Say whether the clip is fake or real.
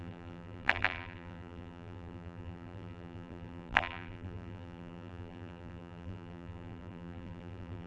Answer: fake